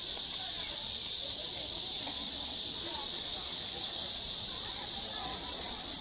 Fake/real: fake